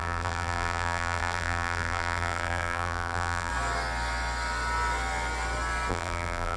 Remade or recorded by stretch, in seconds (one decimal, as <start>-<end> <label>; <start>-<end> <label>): 0.0-3.5 remade; 3.5-5.9 recorded; 5.9-6.6 remade

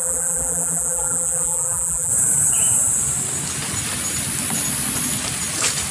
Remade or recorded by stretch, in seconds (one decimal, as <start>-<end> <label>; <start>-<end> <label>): 0.0-2.1 remade; 2.1-5.9 recorded

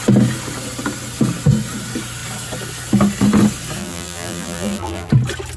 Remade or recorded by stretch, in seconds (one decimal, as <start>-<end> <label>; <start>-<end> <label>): 0.0-3.8 recorded; 3.8-5.1 remade; 5.1-5.6 recorded